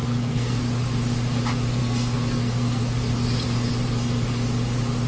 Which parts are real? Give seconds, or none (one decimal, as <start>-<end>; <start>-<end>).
0.6-1.8; 2.8-5.1